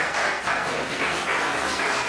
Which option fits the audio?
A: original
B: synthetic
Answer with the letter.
B